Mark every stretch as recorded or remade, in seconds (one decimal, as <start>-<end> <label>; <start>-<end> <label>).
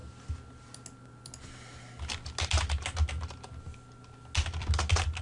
0.0-5.2 recorded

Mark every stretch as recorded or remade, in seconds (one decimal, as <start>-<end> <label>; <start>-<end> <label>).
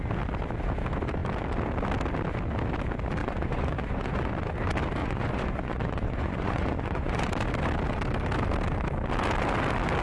0.0-3.2 recorded; 3.2-4.3 remade; 4.3-5.0 recorded; 5.0-7.3 remade; 7.3-10.0 recorded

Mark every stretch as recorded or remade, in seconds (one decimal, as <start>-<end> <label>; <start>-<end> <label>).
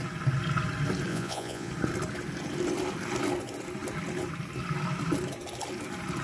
0.0-1.1 recorded; 1.1-1.7 remade; 1.7-6.2 recorded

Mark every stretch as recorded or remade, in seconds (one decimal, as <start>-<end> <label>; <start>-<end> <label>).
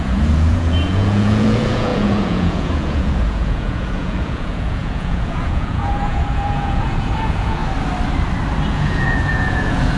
0.0-7.6 remade; 7.6-8.7 recorded; 8.7-10.0 remade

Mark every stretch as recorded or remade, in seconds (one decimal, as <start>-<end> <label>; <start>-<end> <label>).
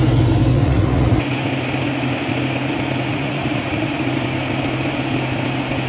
0.0-0.5 recorded; 0.5-1.2 remade; 1.2-3.1 recorded; 3.1-4.0 remade; 4.0-5.9 recorded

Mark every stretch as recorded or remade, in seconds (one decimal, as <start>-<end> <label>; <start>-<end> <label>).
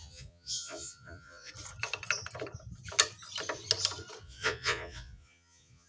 0.0-1.5 remade; 1.5-4.2 recorded; 4.2-5.9 remade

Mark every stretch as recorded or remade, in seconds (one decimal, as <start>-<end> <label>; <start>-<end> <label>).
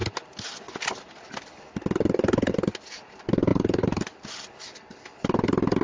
0.0-5.8 recorded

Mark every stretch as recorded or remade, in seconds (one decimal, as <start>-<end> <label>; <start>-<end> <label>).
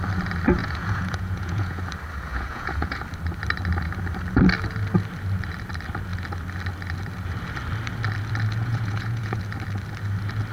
0.0-0.6 recorded; 0.6-1.8 remade; 1.8-2.3 recorded; 2.3-3.0 remade; 3.0-8.6 recorded; 8.6-9.4 remade; 9.4-10.5 recorded